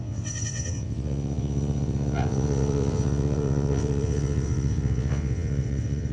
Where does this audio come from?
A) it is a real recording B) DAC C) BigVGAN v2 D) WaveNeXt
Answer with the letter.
D